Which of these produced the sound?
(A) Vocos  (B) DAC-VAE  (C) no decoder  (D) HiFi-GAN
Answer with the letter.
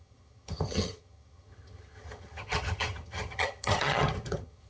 D